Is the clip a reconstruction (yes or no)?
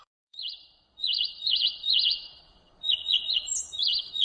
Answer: yes